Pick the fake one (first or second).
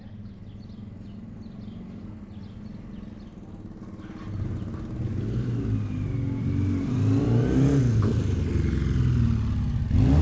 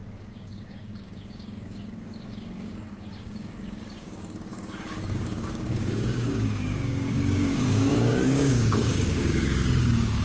second